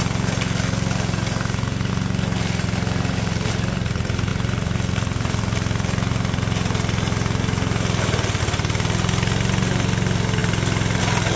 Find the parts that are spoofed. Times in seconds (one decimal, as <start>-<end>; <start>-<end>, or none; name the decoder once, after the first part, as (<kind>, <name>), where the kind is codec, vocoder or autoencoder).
none